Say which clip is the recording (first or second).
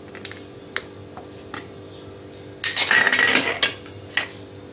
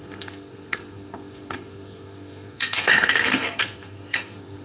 first